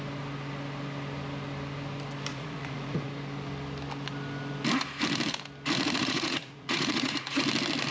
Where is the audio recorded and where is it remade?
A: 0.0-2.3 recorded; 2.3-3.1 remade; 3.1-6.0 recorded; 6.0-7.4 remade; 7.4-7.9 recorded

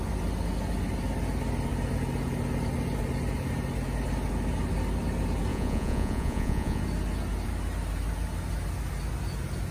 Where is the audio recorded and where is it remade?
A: 0.0-5.5 recorded; 5.5-6.8 remade; 6.8-9.7 recorded

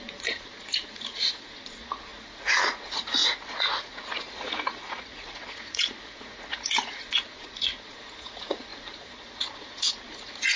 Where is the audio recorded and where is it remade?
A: 0.0-10.6 remade

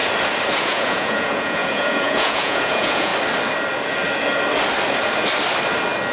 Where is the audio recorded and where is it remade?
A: 0.0-0.6 recorded; 0.6-3.1 remade; 3.1-6.1 recorded

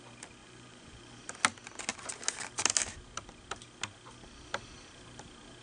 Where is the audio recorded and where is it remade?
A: 0.0-0.4 recorded; 0.4-1.2 remade; 1.2-5.6 recorded

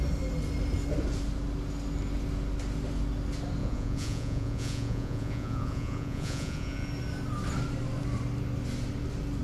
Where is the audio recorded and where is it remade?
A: 0.0-3.6 recorded; 3.6-6.9 remade; 6.9-9.4 recorded

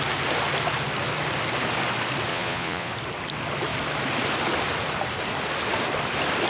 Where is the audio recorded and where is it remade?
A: 0.0-2.3 recorded; 2.3-2.9 remade; 2.9-6.5 recorded

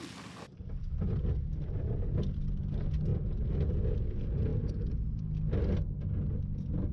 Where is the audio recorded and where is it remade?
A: 0.0-6.9 recorded